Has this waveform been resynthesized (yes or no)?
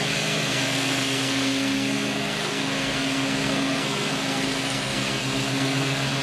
yes